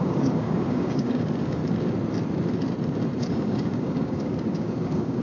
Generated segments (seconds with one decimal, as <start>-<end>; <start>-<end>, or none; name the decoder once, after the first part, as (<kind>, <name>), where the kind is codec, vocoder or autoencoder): 0.0-1.6 (codec, DAC); 3.3-5.2